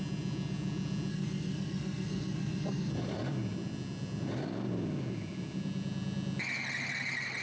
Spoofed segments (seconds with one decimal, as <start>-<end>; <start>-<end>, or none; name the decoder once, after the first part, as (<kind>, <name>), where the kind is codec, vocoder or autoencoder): 1.1-2.9 (codec, SNAC)